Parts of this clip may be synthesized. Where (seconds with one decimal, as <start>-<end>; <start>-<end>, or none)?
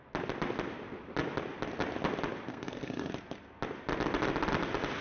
2.5-3.1